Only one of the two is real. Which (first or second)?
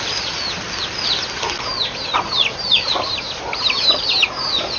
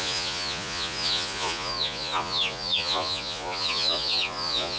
first